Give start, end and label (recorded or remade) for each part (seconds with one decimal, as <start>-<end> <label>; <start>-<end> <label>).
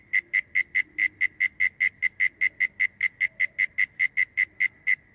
0.0-5.1 recorded